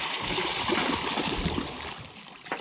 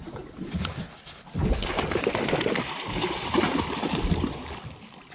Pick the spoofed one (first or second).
second